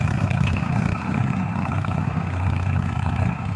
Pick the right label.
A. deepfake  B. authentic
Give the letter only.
A